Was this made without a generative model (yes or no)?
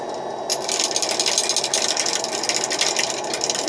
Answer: yes